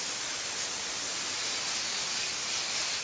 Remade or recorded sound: recorded